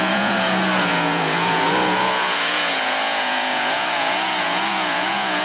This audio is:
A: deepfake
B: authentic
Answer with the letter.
A